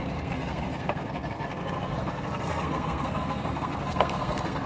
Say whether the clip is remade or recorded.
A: remade